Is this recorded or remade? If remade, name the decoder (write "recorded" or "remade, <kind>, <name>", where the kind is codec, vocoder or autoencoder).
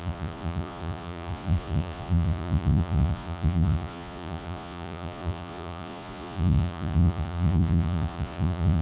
remade, vocoder, Vocos